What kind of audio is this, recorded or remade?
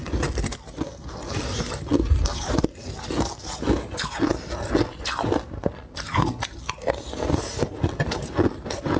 recorded